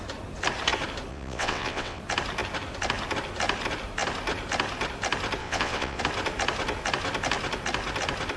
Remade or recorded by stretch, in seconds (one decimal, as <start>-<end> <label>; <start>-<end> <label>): 0.0-1.1 recorded; 1.1-2.0 remade; 2.0-5.4 recorded; 5.4-6.0 remade; 6.0-8.4 recorded